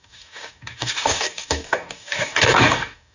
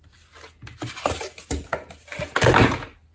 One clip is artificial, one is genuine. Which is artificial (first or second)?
first